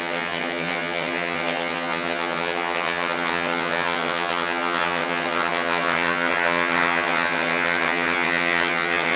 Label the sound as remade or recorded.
remade